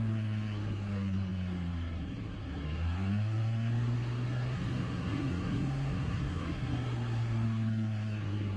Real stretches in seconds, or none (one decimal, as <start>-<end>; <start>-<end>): none